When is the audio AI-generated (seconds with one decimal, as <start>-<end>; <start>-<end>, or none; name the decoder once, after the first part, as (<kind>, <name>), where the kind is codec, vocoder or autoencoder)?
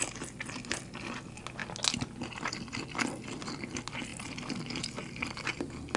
none